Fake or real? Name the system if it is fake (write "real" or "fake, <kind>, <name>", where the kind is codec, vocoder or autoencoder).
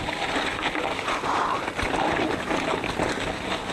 real